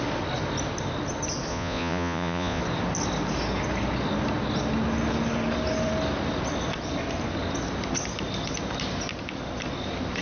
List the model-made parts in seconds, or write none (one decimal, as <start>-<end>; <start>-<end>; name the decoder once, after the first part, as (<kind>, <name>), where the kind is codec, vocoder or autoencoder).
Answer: 1.5-2.6 (vocoder, Vocos)